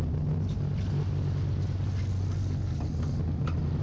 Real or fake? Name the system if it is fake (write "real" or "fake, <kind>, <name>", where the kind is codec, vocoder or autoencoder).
real